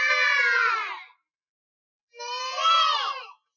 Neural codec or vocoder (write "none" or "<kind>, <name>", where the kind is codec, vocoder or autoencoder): none